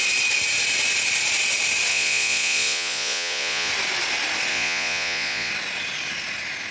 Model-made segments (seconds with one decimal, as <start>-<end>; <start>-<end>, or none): 1.9-3.7; 4.5-5.5